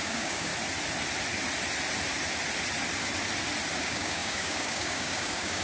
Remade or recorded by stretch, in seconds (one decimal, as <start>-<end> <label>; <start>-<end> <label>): 0.0-0.5 remade; 0.5-3.8 recorded; 3.8-5.6 remade